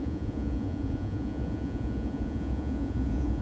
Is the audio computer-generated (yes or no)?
yes